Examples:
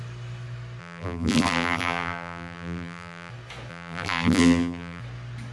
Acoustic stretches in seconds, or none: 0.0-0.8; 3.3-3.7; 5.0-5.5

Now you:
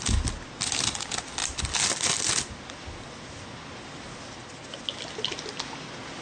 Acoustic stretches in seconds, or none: 0.0-6.2

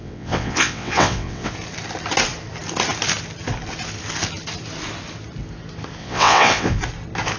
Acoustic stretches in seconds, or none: 1.5-6.0; 6.8-7.4

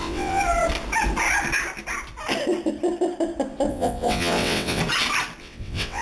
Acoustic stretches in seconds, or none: 0.4-3.7; 4.8-5.4

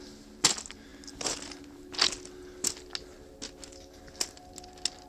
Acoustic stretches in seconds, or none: 0.0-5.1

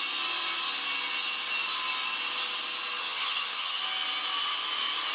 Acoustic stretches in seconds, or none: 0.0-3.0; 3.8-5.1

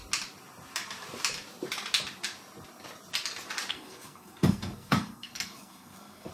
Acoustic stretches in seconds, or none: 0.0-3.7